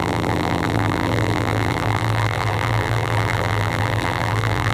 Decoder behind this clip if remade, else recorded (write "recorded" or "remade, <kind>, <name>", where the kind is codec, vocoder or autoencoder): remade, vocoder, BigVGAN v2